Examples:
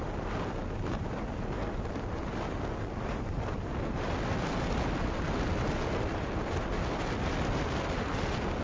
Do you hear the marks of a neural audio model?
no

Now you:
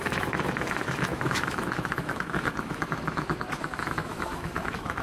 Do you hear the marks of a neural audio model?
yes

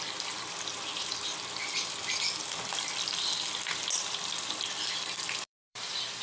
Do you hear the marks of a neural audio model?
yes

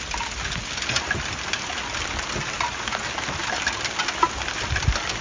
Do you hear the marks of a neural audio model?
no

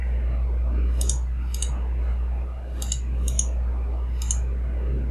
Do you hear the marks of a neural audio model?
no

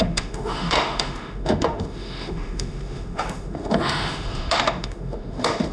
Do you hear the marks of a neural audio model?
yes